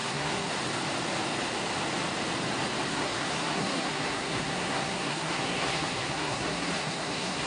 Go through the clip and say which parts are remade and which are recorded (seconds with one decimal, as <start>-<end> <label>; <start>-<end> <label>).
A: 0.0-0.5 remade; 0.5-2.9 recorded; 2.9-7.5 remade